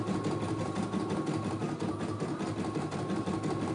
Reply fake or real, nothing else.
real